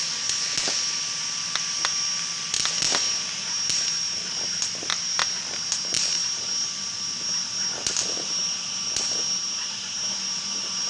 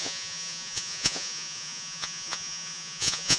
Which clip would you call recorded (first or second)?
first